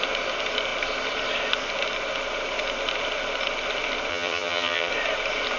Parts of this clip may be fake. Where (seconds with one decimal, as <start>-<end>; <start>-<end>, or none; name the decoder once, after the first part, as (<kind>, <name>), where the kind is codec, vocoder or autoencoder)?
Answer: 4.1-4.9 (vocoder, HiFi-GAN)